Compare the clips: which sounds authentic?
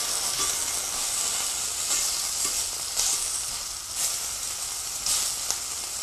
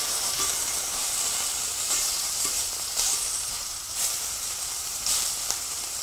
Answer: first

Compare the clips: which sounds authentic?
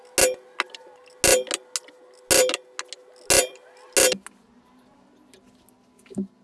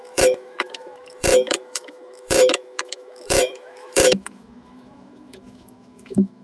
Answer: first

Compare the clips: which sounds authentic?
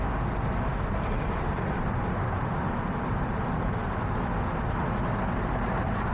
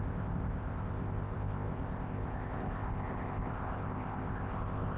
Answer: first